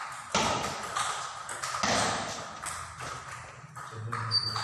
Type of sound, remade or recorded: recorded